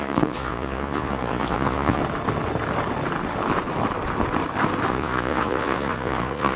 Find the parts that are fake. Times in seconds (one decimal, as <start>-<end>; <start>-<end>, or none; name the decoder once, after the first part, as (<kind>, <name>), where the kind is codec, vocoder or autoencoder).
0.0-2.0 (vocoder, Vocos); 4.9-6.6